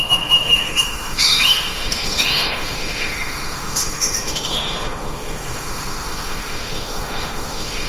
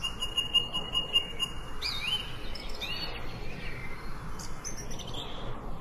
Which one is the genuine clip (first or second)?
second